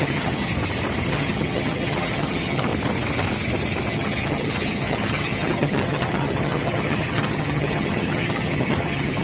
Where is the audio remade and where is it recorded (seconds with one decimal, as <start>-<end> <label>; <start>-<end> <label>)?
0.0-0.5 remade; 0.5-1.1 recorded; 1.1-2.7 remade; 2.7-3.9 recorded; 3.9-9.2 remade